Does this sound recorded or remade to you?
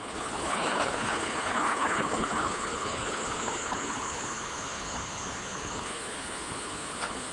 remade